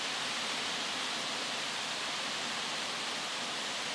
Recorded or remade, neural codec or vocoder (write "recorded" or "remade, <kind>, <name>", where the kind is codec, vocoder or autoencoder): recorded